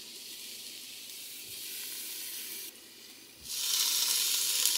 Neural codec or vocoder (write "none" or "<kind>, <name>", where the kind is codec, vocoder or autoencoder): none